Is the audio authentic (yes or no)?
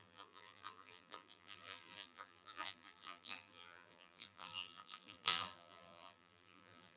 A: no